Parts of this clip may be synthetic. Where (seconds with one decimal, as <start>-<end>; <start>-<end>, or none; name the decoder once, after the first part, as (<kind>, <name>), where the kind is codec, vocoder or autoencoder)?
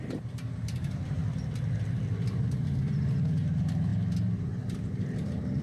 0.0-1.2 (vocoder, BigVGAN v2); 2.3-3.9; 4.5-5.6